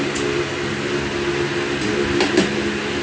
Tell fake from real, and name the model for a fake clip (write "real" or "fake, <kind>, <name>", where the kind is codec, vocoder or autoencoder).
real